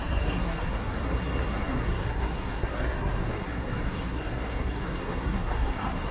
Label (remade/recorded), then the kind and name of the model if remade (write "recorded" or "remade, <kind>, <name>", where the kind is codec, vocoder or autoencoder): remade, codec, SNAC